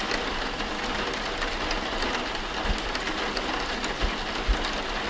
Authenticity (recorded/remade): recorded